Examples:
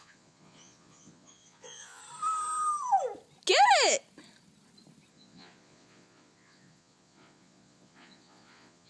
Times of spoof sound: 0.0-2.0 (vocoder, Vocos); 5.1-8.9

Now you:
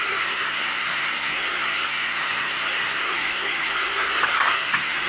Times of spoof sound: 0.0-5.1 (codec, SNAC)

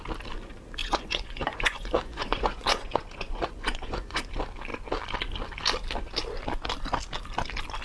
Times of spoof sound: 0.8-4.3 (vocoder, Vocos)

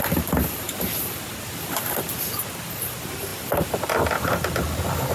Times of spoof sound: none

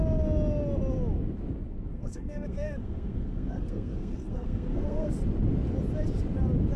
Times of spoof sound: 1.9-5.1 (codec, SNAC)